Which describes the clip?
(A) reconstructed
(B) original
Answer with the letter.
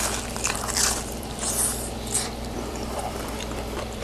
A